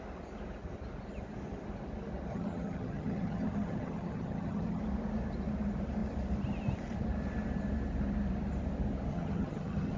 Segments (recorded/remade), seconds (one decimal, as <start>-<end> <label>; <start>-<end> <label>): 0.0-2.3 recorded; 2.3-4.8 remade; 4.8-9.1 recorded; 9.1-10.0 remade